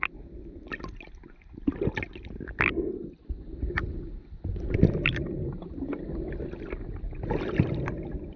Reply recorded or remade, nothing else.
recorded